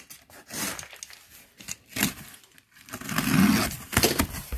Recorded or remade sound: recorded